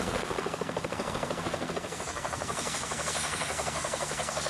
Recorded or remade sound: remade